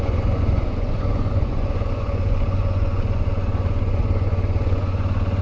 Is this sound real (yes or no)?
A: no